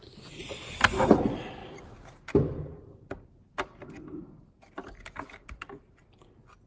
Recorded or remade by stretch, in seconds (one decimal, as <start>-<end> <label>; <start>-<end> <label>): 0.0-6.7 recorded